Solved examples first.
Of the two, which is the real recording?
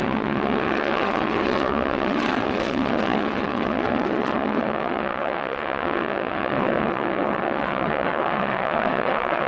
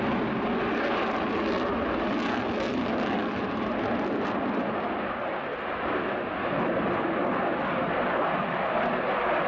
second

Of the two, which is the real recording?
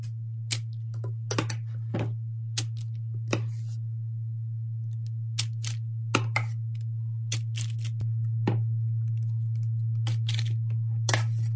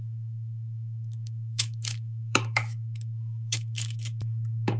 first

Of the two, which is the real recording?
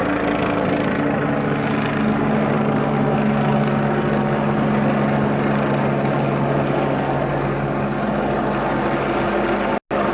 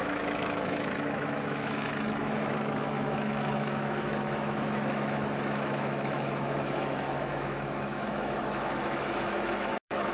first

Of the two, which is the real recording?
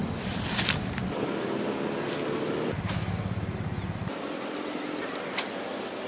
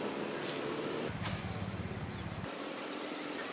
first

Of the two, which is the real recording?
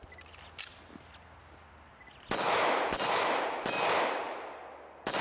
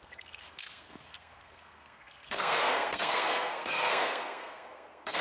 first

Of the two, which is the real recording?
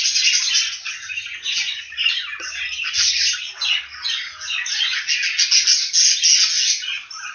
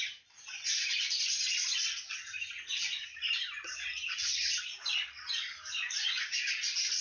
first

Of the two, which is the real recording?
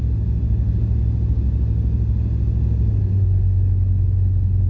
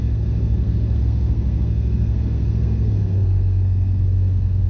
first